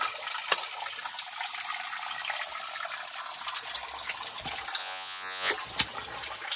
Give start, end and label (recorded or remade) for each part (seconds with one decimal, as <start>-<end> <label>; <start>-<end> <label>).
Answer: 0.0-4.8 recorded; 4.8-5.5 remade; 5.5-6.6 recorded